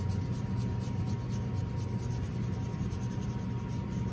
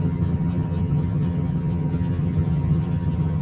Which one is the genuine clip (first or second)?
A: first